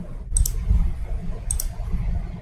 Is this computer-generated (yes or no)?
no